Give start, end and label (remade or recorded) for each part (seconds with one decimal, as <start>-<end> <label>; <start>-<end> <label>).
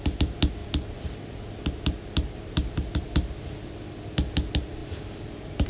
0.0-4.8 recorded; 4.8-5.7 remade